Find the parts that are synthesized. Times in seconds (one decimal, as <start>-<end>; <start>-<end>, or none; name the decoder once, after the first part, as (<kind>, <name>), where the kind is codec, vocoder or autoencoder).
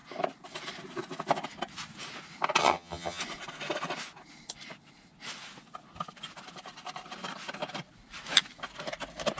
2.6-3.2 (vocoder, HiFi-GAN)